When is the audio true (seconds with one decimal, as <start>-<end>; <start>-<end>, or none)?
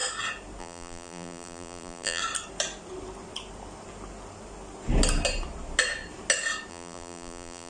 0.0-0.6; 2.2-6.7